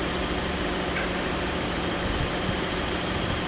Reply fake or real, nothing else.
real